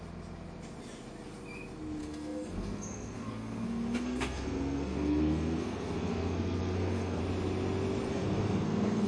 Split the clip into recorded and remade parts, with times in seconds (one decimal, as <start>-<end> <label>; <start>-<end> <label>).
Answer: 0.0-2.0 recorded; 2.0-7.2 remade; 7.2-8.1 recorded; 8.1-9.1 remade